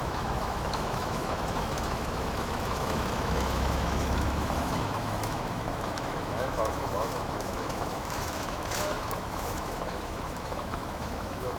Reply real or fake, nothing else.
fake